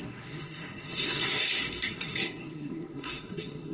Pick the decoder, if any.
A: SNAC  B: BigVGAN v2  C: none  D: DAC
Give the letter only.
A